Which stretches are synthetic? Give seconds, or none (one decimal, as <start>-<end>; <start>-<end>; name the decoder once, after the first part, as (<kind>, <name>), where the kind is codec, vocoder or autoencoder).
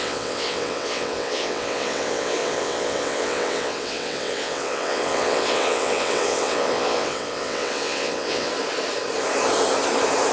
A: 0.0-8.5 (vocoder, WaveNeXt)